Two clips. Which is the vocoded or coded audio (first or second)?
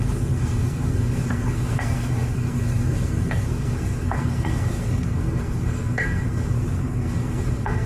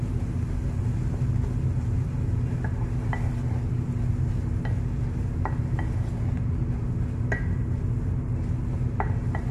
first